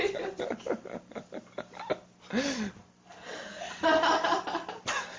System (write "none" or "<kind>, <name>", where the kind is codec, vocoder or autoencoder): none